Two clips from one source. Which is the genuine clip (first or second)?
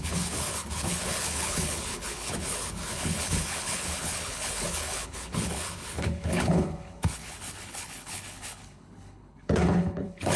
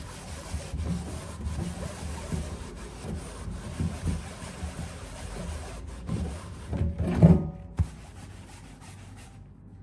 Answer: second